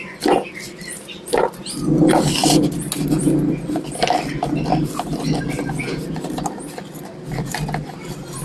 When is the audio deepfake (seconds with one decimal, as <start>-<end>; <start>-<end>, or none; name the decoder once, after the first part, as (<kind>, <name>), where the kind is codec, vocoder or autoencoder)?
none